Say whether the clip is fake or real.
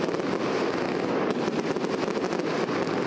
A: real